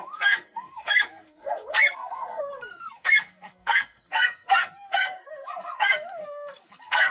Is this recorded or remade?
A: remade